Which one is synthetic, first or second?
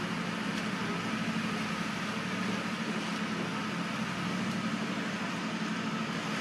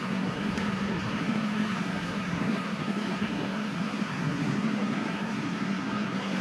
second